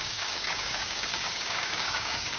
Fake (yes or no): yes